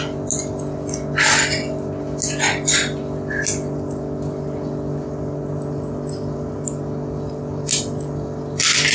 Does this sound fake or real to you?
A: real